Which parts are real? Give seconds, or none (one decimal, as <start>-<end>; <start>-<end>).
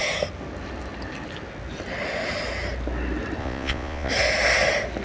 0.0-3.4; 4.1-5.0